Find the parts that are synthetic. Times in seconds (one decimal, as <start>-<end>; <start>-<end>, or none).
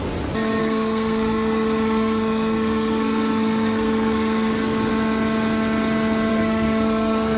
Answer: 0.6-4.9; 6.3-7.4